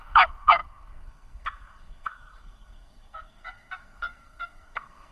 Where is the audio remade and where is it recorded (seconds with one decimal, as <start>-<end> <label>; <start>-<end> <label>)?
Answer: 0.0-5.1 remade

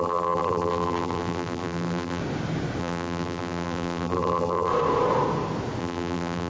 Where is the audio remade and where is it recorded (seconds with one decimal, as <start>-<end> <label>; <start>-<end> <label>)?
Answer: 0.0-2.2 remade; 2.2-2.8 recorded; 2.8-4.7 remade; 4.7-5.8 recorded; 5.8-6.5 remade

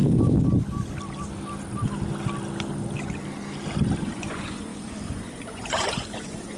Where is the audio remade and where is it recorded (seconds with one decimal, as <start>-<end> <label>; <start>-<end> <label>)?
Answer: 0.0-4.0 recorded; 4.0-6.6 remade

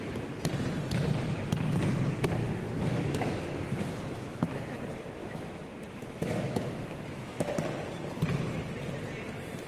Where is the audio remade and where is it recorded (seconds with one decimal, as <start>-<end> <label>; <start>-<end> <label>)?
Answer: 0.0-2.4 recorded; 2.4-4.8 remade; 4.8-5.2 recorded; 5.2-7.5 remade; 7.5-9.7 recorded